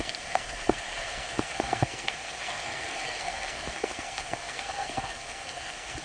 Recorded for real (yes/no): no